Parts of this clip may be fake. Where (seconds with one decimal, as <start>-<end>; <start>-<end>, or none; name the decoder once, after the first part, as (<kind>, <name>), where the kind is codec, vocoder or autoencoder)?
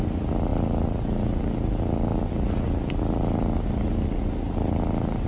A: none